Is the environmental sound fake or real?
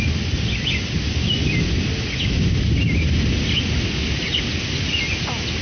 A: real